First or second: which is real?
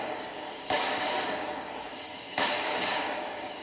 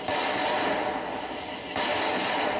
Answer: second